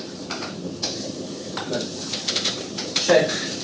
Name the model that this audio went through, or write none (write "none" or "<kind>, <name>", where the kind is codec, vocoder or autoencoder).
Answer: vocoder, BigVGAN v2